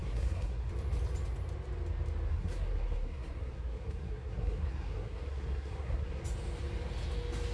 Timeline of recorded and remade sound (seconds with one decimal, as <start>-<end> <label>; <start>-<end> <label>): 0.0-0.7 remade; 0.7-2.3 recorded; 2.3-6.2 remade; 6.2-7.5 recorded